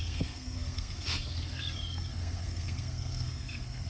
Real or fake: fake